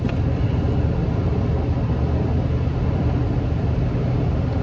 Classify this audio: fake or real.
real